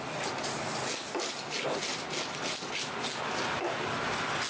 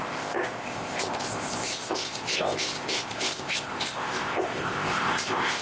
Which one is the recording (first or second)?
first